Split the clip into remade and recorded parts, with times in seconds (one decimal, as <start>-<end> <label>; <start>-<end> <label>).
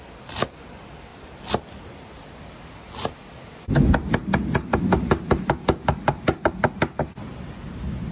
0.0-8.1 recorded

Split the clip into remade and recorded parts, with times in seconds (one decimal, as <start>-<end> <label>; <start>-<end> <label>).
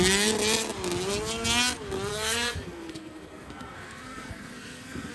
0.0-2.1 recorded; 2.1-5.1 remade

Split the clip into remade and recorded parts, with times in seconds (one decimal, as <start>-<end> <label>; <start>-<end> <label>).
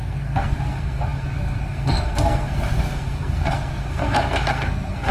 0.0-5.1 remade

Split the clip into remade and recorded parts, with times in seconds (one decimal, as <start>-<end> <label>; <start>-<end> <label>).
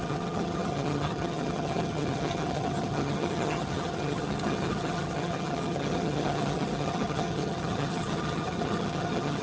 0.0-9.4 remade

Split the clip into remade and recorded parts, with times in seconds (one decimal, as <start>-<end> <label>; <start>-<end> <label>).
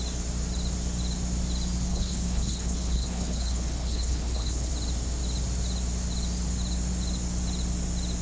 0.0-1.9 recorded; 1.9-4.7 remade; 4.7-8.2 recorded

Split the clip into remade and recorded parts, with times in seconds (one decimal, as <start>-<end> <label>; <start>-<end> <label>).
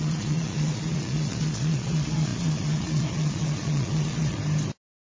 0.0-4.4 remade; 4.4-5.2 recorded